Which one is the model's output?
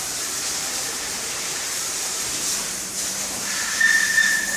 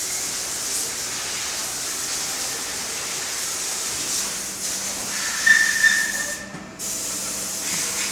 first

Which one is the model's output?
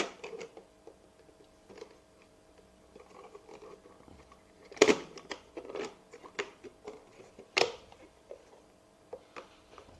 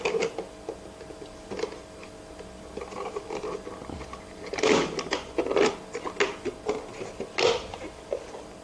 first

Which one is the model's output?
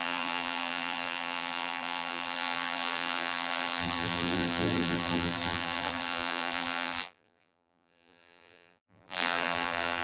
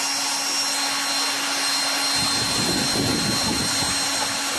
first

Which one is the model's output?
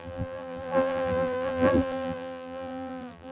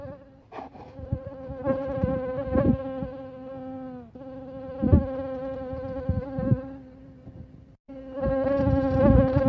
first